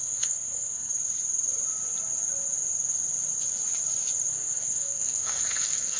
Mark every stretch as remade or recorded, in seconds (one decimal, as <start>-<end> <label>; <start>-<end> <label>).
0.0-0.9 remade; 0.9-4.3 recorded; 4.3-6.0 remade